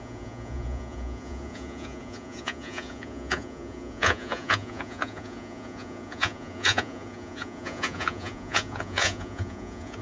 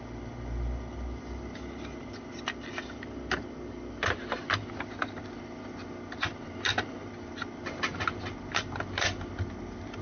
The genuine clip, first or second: second